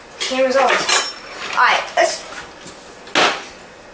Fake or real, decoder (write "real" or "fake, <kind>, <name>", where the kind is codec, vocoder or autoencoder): real